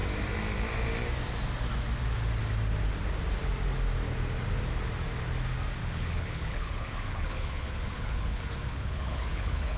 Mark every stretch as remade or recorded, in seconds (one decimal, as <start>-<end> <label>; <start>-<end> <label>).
0.0-5.8 recorded; 5.8-9.8 remade